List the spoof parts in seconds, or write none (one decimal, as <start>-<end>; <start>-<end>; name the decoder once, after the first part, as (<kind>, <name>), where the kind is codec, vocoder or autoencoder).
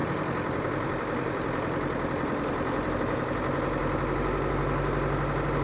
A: 0.0-2.9 (vocoder, BigVGAN v2)